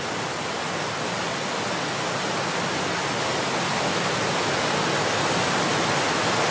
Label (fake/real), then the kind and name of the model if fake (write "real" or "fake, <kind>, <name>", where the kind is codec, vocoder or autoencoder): real